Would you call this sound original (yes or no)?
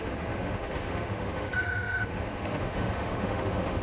no